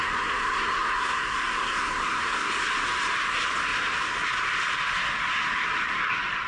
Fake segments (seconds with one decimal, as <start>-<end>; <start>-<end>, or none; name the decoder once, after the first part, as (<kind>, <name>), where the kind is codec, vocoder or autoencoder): 0.0-2.5 (codec, SNAC)